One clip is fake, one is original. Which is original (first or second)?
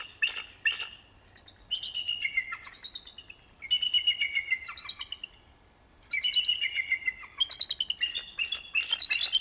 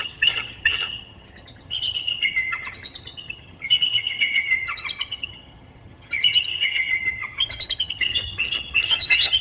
first